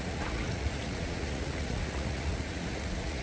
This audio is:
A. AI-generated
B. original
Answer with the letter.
A